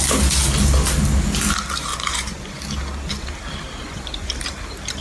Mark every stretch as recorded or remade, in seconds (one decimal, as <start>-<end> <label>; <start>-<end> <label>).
0.0-1.9 recorded; 1.9-2.6 remade; 2.6-3.8 recorded; 3.8-4.3 remade; 4.3-5.0 recorded